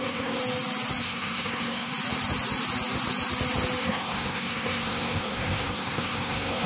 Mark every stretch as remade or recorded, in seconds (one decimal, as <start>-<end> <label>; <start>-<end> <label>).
0.0-0.4 remade; 0.4-1.0 recorded; 1.0-1.9 remade; 1.9-3.8 recorded; 3.8-6.7 remade